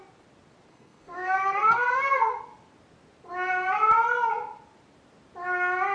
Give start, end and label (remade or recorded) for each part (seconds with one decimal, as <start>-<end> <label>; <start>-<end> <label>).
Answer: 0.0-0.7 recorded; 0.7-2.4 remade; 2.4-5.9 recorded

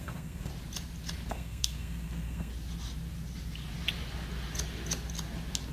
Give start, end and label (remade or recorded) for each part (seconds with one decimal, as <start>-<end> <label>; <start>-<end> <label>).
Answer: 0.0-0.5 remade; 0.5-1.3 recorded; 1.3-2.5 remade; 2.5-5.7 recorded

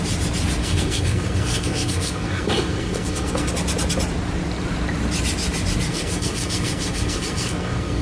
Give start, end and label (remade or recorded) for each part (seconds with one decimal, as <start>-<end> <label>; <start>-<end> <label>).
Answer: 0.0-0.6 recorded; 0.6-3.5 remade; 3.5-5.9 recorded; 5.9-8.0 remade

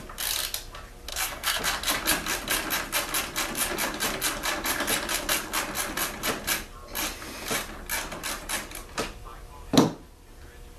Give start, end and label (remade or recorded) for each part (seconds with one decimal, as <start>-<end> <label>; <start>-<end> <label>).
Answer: 0.0-1.1 recorded; 1.1-1.6 remade; 1.6-10.8 recorded